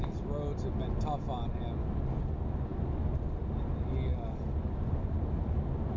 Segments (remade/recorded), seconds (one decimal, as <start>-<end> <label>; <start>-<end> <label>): 0.0-6.0 recorded